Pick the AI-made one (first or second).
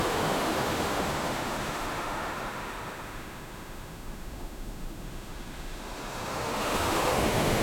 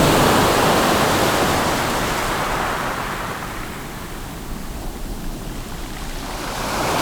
first